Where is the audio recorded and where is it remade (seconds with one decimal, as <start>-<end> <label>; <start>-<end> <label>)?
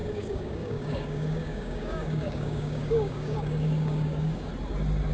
0.0-4.5 remade; 4.5-5.1 recorded